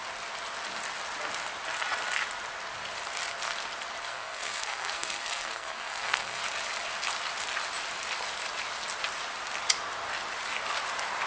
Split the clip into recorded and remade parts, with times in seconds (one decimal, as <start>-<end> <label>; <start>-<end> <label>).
0.0-4.0 recorded; 4.0-6.4 remade; 6.4-11.3 recorded

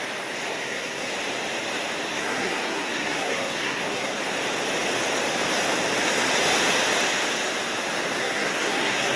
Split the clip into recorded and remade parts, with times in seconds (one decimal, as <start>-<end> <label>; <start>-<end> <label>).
0.0-0.5 recorded; 0.5-1.1 remade; 1.1-2.1 recorded; 2.1-4.2 remade; 4.2-8.2 recorded; 8.2-9.2 remade

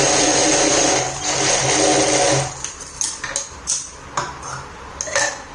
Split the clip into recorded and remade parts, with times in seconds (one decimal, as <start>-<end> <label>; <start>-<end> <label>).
0.0-5.5 recorded

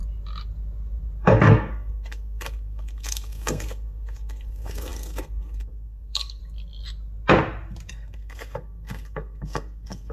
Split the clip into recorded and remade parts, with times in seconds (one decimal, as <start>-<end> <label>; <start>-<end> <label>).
0.0-1.2 recorded; 1.2-6.4 remade; 6.4-7.9 recorded; 7.9-10.1 remade

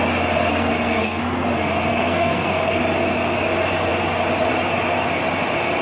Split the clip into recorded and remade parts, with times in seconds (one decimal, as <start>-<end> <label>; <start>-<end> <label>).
0.0-0.5 recorded; 0.5-1.2 remade; 1.2-1.9 recorded; 1.9-2.8 remade; 2.8-5.8 recorded

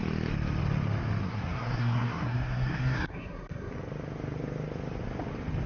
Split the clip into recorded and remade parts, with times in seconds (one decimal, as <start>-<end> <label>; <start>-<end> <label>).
0.0-1.2 recorded; 1.2-3.7 remade; 3.7-5.7 recorded